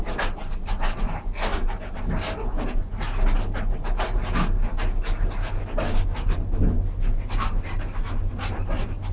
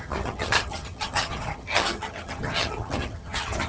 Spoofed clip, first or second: second